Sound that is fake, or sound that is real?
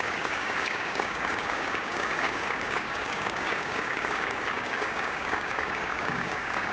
fake